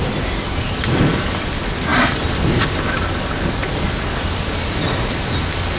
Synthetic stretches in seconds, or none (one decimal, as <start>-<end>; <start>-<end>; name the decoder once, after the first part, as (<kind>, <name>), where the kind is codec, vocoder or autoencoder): none